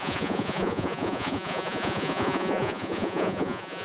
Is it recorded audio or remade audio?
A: remade